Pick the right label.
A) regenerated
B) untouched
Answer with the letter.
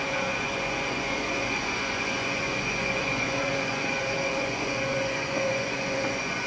A